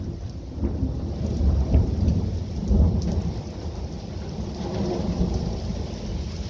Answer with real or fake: real